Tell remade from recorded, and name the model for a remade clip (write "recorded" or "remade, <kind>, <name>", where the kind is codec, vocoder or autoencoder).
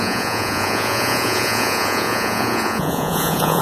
remade, vocoder, Vocos